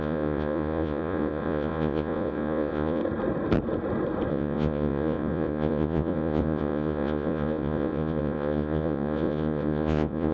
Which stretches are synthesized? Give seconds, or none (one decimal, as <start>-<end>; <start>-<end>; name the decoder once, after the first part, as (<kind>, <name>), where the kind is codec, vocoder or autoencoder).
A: 0.0-3.0 (vocoder, Vocos); 4.3-10.3